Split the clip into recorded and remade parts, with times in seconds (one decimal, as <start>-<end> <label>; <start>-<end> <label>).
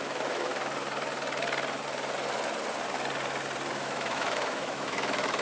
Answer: 0.0-0.5 remade; 0.5-3.7 recorded; 3.7-5.4 remade